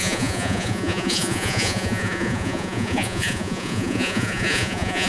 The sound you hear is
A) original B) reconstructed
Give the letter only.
B